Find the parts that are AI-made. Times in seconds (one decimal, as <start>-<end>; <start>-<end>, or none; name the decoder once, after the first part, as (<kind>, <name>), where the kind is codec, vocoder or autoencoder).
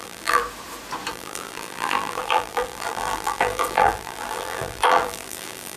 0.0-0.4 (vocoder, BigVGAN v2); 1.1-5.8